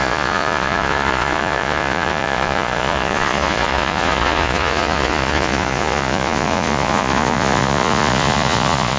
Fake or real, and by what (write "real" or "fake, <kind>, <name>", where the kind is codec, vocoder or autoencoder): fake, vocoder, Vocos